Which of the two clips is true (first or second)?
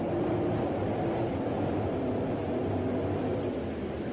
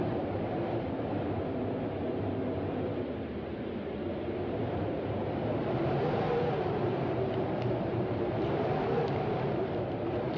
first